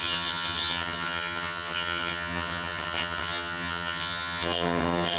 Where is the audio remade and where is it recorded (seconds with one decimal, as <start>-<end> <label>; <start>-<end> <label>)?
0.0-5.2 remade